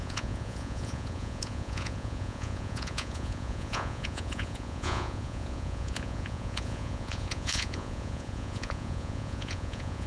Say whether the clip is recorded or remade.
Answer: remade